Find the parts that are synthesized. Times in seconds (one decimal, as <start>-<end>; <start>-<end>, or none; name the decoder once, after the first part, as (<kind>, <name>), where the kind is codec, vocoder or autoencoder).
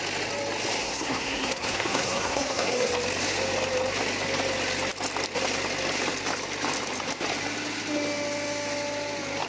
0.8-2.9 (codec, SNAC)